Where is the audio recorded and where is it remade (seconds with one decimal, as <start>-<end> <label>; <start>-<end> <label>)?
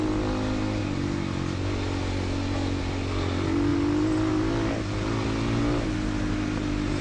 0.0-7.0 recorded